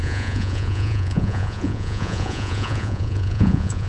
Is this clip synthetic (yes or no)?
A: yes